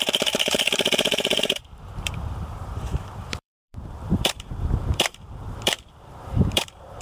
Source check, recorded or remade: remade